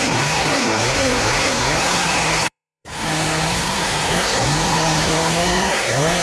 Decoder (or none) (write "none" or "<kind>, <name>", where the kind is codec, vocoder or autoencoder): codec, SNAC